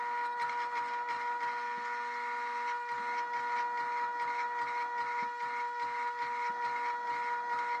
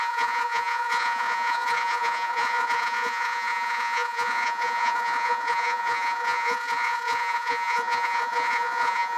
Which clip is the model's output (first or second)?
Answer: second